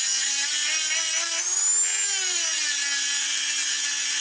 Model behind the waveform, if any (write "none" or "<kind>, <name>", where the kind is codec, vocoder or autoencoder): none